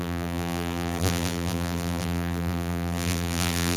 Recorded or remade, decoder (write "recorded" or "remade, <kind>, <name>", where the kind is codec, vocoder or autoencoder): remade, vocoder, BigVGAN v2